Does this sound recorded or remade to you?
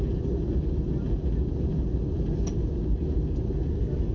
recorded